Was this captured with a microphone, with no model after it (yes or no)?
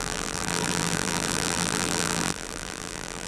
no